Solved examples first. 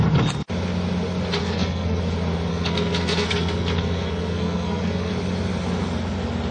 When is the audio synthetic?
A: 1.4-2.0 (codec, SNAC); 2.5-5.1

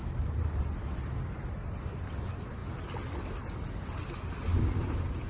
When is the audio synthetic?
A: 4.5-5.3 (codec, DAC)

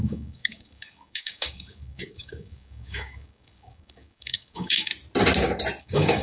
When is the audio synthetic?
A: 0.0-4.9 (codec, DAC); 5.8-6.2

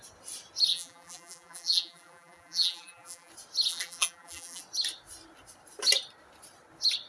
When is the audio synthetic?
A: 0.7-3.3 (vocoder, BigVGAN v2); 3.7-4.6

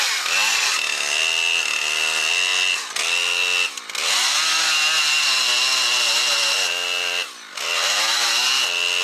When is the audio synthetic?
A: none